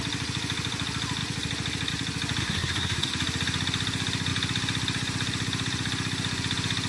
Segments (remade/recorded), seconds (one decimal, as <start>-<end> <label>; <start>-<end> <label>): 0.0-2.4 recorded; 2.4-3.1 remade; 3.1-6.9 recorded